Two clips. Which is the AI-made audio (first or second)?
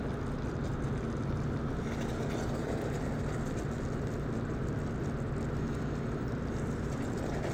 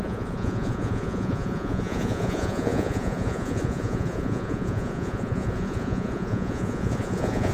second